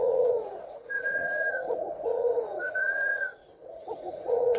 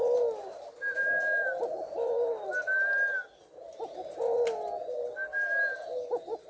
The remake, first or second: first